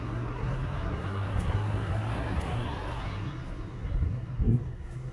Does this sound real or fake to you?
fake